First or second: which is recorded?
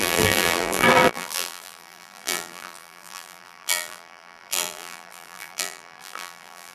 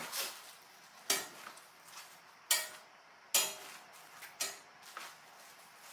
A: second